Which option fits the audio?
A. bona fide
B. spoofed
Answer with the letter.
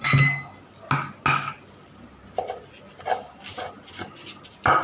A